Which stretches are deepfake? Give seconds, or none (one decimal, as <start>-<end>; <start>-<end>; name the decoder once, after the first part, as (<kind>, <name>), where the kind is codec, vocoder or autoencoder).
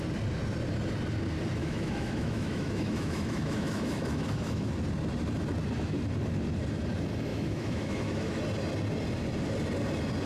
1.6-4.7 (autoencoder, DAC-VAE); 7.3-8.4